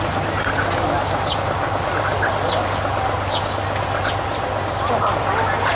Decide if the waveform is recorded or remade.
recorded